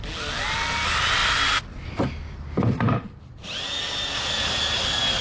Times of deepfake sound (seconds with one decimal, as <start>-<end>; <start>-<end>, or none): none